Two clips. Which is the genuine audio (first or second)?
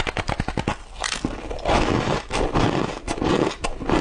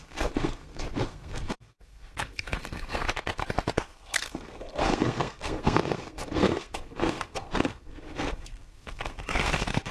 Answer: first